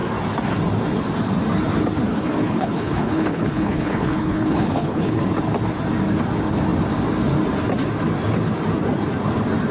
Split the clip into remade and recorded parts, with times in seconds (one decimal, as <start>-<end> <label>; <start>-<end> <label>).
0.0-2.1 recorded; 2.1-5.2 remade; 5.2-9.7 recorded